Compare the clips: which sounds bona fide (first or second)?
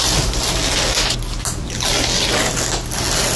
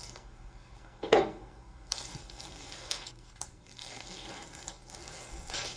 first